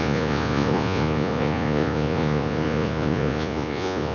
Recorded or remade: remade